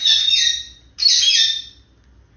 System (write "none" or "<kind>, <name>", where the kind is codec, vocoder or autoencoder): none